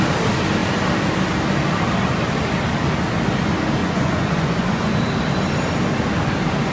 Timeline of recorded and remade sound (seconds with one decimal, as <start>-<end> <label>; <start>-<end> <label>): 0.0-3.8 recorded; 3.8-4.9 remade; 4.9-6.7 recorded